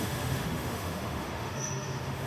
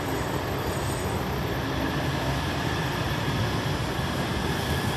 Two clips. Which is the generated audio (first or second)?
first